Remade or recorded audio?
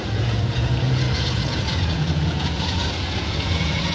remade